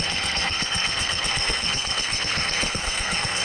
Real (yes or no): no